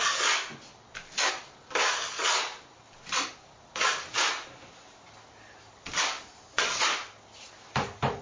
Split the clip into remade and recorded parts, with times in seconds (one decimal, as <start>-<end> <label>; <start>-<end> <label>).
0.0-8.2 recorded